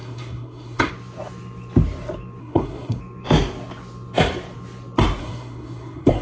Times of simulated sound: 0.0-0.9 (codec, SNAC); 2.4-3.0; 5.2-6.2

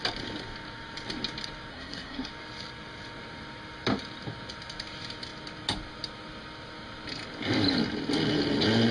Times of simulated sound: 1.7-2.3 (codec, SNAC)

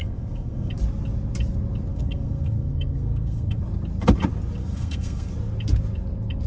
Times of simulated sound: 0.0-0.7 (codec, SNAC); 1.9-3.6; 4.6-5.3

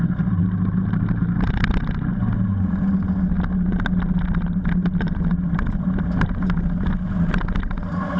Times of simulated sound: none